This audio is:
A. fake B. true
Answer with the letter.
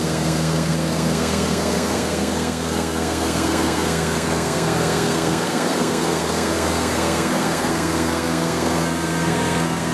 A